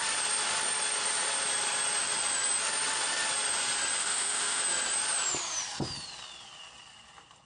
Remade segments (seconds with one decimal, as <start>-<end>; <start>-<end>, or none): 4.0-4.6